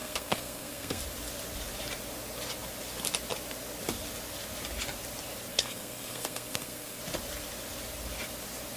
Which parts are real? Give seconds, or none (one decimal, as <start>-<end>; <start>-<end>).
1.0-5.5; 7.0-8.8